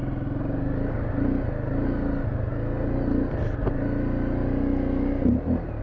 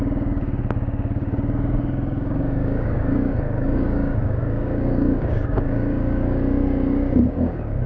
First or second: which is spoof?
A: second